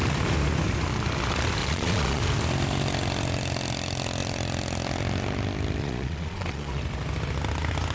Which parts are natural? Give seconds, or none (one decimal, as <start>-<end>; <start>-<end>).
0.0-1.6; 2.2-5.8; 6.8-7.9